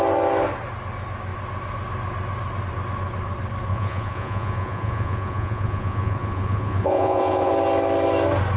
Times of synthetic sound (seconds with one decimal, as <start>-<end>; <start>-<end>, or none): 3.7-7.5